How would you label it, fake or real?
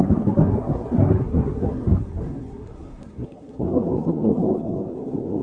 fake